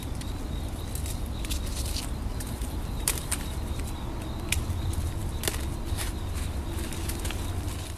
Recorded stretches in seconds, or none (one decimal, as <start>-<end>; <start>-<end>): 0.0-2.3; 3.8-8.0